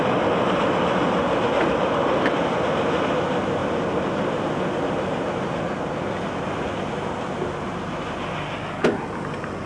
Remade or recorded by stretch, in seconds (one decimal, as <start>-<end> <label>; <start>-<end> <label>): 0.0-9.7 recorded